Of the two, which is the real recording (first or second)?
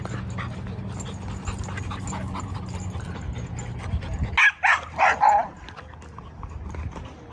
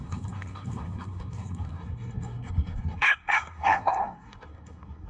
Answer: first